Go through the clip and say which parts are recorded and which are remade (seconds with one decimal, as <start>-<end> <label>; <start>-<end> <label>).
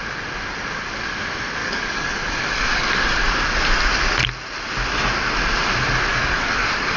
0.0-1.6 recorded; 1.6-2.9 remade; 2.9-6.1 recorded; 6.1-7.0 remade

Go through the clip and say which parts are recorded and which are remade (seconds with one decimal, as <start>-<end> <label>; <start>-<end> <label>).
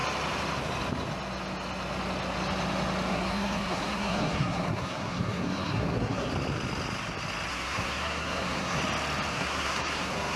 0.0-3.1 recorded; 3.1-6.3 remade; 6.3-7.5 recorded; 7.5-8.8 remade; 8.8-9.3 recorded; 9.3-10.4 remade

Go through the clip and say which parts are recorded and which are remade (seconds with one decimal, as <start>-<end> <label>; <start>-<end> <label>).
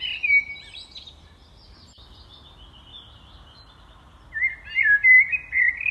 0.0-5.9 recorded